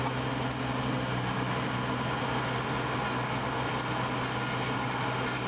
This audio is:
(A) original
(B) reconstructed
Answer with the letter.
A